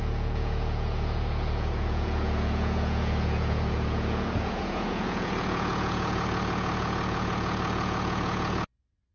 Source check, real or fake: fake